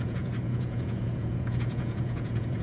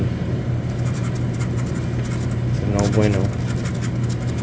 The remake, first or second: first